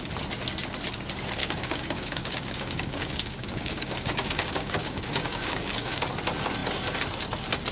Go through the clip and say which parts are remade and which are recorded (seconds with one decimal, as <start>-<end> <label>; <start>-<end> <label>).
0.0-1.4 recorded; 1.4-6.0 remade; 6.0-7.7 recorded

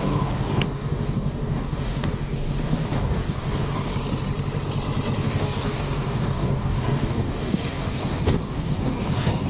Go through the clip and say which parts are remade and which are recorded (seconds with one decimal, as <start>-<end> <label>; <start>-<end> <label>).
0.0-3.9 remade; 3.9-5.2 recorded; 5.2-9.5 remade

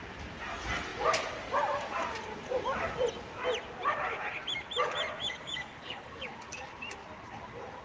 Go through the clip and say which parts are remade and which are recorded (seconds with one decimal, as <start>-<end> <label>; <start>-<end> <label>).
0.0-5.2 recorded; 5.2-6.6 remade; 6.6-7.8 recorded

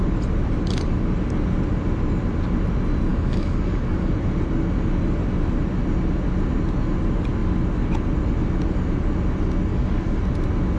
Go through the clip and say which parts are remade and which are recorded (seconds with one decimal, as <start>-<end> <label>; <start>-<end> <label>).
0.0-3.1 recorded; 3.1-4.1 remade; 4.1-9.7 recorded; 9.7-10.2 remade; 10.2-10.8 recorded

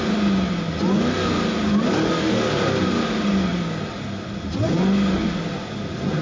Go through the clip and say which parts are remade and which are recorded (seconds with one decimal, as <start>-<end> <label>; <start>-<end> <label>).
0.0-6.2 recorded

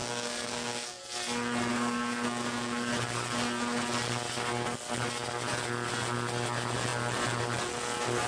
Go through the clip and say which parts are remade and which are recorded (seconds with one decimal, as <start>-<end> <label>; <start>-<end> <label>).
0.0-1.0 remade; 1.0-1.7 recorded; 1.7-2.9 remade; 2.9-8.3 recorded

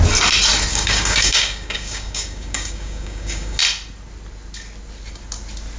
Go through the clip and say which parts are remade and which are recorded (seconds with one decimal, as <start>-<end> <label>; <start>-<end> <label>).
0.0-0.7 recorded; 0.7-3.6 remade; 3.6-5.8 recorded

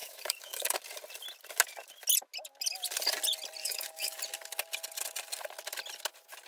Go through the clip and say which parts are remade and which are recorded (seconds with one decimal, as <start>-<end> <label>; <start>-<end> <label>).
0.0-0.8 remade; 0.8-3.6 recorded; 3.6-4.2 remade; 4.2-6.5 recorded